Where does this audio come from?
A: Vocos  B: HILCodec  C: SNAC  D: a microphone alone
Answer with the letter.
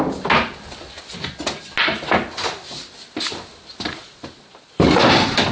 D